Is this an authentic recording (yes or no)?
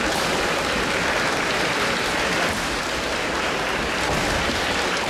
no